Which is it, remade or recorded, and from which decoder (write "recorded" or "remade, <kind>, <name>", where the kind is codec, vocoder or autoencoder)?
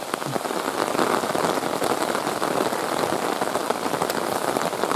recorded